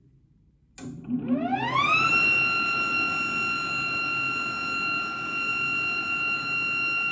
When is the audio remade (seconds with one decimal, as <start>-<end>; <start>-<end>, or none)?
none